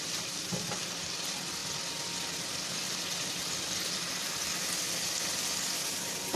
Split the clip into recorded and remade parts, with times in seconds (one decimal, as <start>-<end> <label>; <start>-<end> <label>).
0.0-6.4 recorded